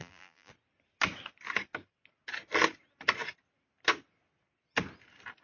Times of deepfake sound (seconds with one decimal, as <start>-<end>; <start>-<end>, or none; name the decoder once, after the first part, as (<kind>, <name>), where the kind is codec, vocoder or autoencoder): 0.0-0.5 (vocoder, BigVGAN v2)